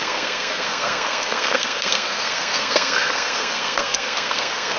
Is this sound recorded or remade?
remade